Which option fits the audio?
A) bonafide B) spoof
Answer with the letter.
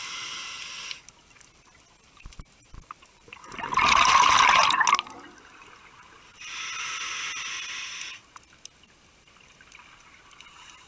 A